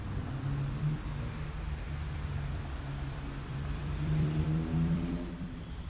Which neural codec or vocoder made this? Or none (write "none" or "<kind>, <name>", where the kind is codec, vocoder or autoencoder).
vocoder, BigVGAN v2